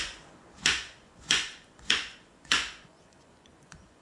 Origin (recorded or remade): remade